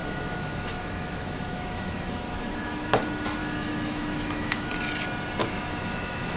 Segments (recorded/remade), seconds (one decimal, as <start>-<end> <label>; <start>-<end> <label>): 0.0-2.9 remade; 2.9-3.4 recorded; 3.4-4.7 remade; 4.7-5.4 recorded; 5.4-6.4 remade